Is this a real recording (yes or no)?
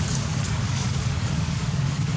no